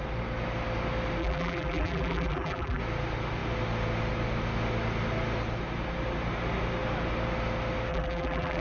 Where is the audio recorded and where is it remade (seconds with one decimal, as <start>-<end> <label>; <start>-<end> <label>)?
0.0-1.2 recorded; 1.2-2.8 remade; 2.8-7.9 recorded; 7.9-8.6 remade

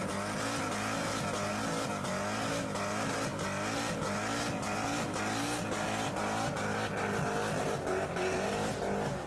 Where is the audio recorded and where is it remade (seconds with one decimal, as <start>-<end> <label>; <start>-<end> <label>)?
0.0-9.3 recorded

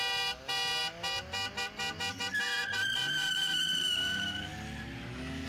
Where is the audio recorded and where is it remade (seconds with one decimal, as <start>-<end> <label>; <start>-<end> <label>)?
0.0-2.6 recorded; 2.6-4.5 remade; 4.5-5.5 recorded

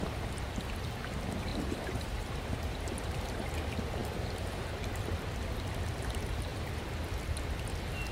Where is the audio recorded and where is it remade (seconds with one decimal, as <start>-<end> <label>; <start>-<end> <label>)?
0.0-1.5 recorded; 1.5-3.5 remade; 3.5-6.5 recorded; 6.5-7.2 remade; 7.2-8.1 recorded